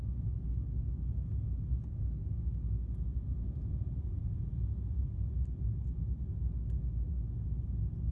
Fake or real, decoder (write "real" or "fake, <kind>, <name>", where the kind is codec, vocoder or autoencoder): real